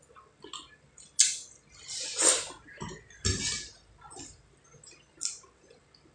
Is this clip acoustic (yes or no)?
yes